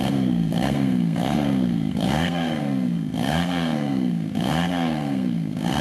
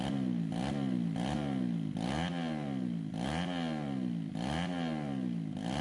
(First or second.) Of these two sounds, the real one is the second